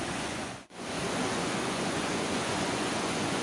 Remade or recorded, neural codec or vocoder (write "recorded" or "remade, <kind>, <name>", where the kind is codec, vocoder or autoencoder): remade, vocoder, Vocos